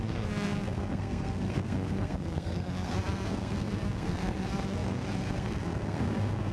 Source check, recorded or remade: remade